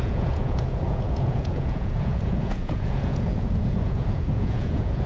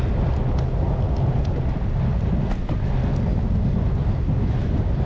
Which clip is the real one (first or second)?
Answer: second